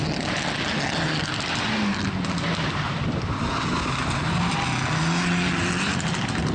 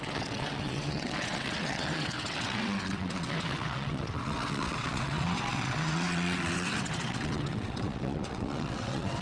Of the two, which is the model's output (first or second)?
second